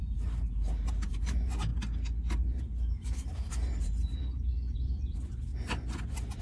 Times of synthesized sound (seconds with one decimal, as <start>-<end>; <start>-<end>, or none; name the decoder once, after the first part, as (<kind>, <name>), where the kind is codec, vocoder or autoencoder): 0.0-1.7 (vocoder, BigVGAN v2); 2.6-5.5